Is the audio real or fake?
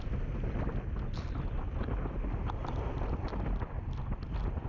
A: real